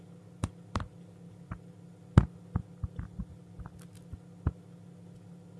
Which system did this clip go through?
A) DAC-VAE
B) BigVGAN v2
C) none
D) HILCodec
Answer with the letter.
C